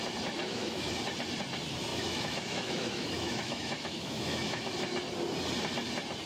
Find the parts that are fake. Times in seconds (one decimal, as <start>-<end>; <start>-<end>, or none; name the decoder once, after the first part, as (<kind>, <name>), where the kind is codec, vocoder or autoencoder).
0.4-0.9 (autoencoder, DAC-VAE); 1.9-4.7